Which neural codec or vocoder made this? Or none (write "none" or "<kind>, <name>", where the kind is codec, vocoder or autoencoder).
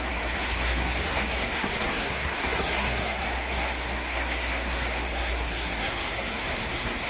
codec, SNAC